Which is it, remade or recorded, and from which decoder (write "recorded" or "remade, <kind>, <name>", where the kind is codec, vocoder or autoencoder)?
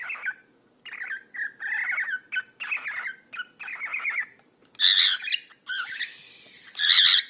recorded